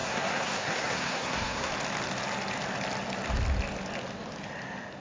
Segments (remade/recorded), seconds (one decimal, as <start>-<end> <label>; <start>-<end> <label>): 0.0-1.7 remade; 1.7-5.0 recorded